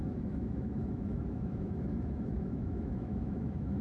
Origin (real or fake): fake